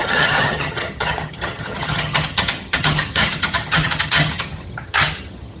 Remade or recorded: remade